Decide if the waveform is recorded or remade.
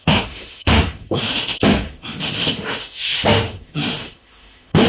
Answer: remade